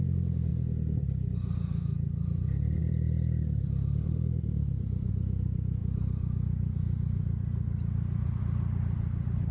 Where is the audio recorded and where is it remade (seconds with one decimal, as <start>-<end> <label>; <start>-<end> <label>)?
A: 0.0-0.5 remade; 0.5-1.3 recorded; 1.3-9.5 remade

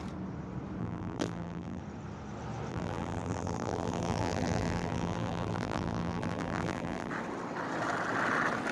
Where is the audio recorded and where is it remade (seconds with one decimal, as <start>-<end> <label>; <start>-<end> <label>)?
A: 0.0-0.8 recorded; 0.8-1.8 remade; 1.8-2.7 recorded; 2.7-7.1 remade; 7.1-8.7 recorded

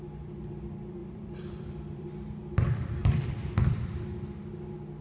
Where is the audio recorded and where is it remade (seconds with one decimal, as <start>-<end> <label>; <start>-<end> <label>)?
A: 0.0-1.0 recorded; 1.0-4.0 remade; 4.0-5.0 recorded

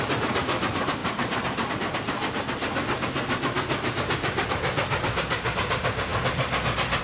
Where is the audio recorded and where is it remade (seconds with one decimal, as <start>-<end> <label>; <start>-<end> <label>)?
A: 0.0-1.0 recorded; 1.0-1.7 remade; 1.7-7.0 recorded

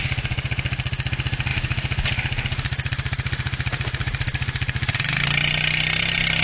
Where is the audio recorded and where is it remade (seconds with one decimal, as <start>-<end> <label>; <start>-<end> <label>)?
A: 0.0-1.5 recorded; 1.5-5.2 remade; 5.2-6.4 recorded

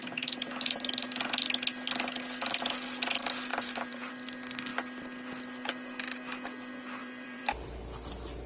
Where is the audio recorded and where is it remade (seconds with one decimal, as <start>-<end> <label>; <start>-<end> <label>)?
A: 0.0-3.5 recorded; 3.5-4.1 remade; 4.1-7.0 recorded; 7.0-7.8 remade; 7.8-8.5 recorded